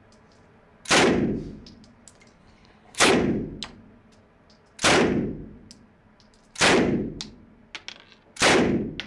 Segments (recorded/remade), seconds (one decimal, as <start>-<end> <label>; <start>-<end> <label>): 0.0-2.4 recorded; 2.4-3.1 remade; 3.1-9.1 recorded